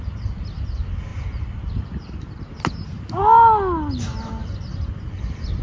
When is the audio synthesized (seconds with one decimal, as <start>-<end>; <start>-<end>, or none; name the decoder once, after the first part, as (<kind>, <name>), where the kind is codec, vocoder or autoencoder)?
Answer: none